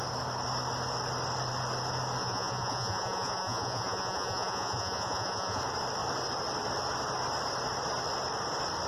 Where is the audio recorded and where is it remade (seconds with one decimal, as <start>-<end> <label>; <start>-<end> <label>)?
0.0-2.2 recorded; 2.2-5.6 remade; 5.6-8.9 recorded